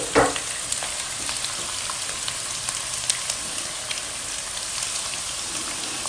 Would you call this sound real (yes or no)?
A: yes